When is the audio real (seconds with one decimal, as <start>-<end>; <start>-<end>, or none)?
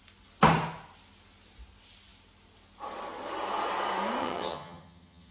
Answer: 0.0-4.2